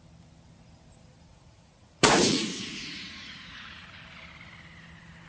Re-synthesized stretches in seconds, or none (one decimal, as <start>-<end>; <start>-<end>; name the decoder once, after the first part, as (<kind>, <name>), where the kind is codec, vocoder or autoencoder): 1.3-3.9 (vocoder, Vocos)